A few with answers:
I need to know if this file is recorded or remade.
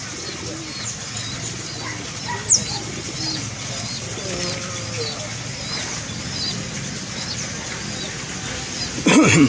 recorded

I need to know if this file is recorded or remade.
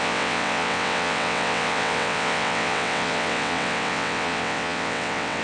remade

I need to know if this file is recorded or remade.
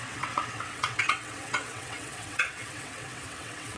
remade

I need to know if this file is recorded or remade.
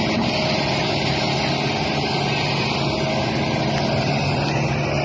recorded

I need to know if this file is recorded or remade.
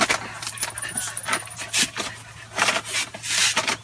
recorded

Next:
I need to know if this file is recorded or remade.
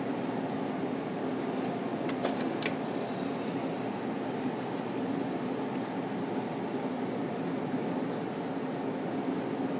recorded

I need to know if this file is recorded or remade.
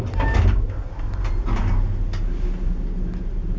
recorded